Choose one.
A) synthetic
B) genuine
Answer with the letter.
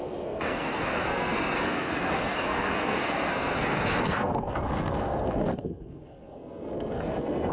A